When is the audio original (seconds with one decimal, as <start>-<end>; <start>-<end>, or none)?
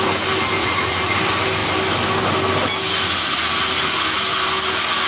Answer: 0.0-0.6; 1.2-5.1